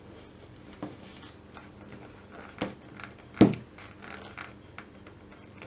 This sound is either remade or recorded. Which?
recorded